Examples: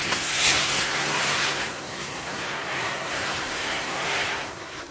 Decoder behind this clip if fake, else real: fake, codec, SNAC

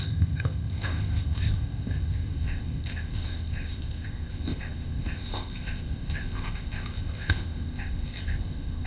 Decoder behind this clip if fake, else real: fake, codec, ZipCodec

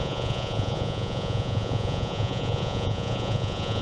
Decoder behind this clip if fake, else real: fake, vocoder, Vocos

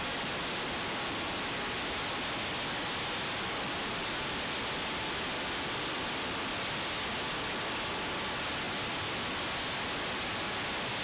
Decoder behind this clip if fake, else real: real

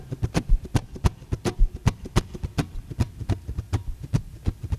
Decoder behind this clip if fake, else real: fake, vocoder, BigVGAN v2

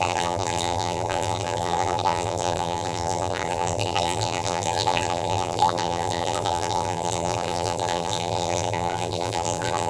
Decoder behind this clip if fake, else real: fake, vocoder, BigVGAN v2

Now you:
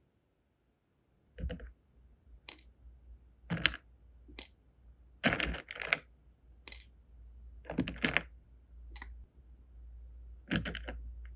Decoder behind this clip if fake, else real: real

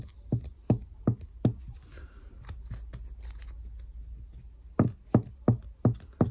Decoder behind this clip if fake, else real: real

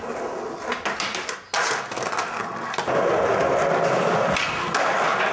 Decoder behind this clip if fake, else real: real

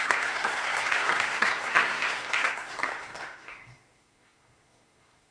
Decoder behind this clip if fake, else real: fake, codec, SNAC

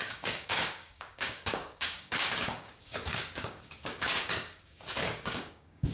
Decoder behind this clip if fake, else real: fake, codec, DAC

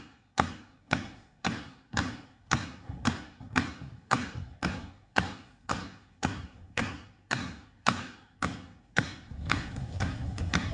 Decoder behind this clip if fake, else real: fake, codec, SNAC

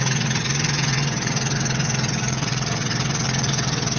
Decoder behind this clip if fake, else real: fake, vocoder, WaveNeXt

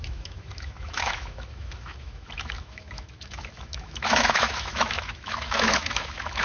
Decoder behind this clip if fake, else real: fake, autoencoder, DAC-VAE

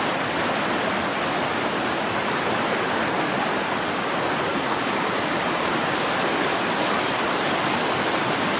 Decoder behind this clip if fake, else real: real